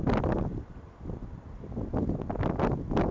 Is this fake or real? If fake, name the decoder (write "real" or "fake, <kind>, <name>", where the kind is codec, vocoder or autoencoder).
real